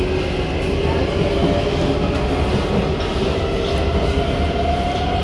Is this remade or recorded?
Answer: recorded